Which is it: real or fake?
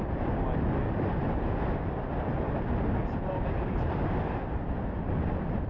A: real